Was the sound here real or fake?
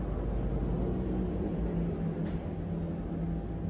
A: real